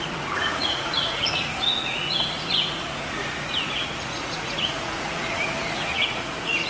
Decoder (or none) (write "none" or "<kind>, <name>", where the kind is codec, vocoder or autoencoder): vocoder, Vocos